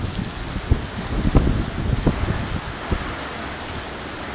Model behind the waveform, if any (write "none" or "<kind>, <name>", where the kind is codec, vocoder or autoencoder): none